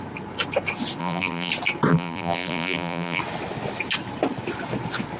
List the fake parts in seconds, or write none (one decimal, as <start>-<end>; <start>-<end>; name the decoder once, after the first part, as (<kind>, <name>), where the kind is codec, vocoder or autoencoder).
1.0-1.5 (vocoder, BigVGAN v2); 1.9-3.2